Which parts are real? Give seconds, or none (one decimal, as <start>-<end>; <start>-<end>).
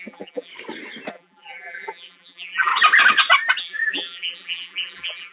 0.5-1.1; 2.7-3.6